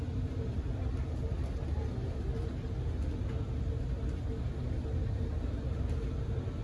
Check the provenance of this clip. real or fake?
real